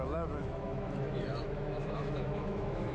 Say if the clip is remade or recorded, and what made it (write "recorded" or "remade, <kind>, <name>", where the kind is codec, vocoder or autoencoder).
remade, autoencoder, DAC-VAE